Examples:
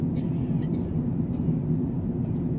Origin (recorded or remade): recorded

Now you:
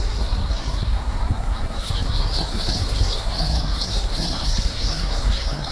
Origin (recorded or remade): remade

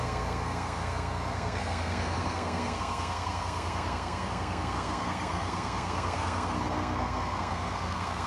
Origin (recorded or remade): remade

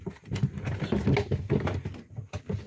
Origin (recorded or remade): recorded